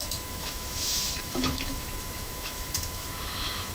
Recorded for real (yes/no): no